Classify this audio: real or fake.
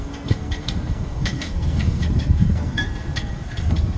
fake